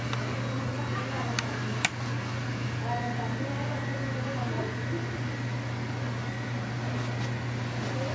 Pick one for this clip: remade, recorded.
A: recorded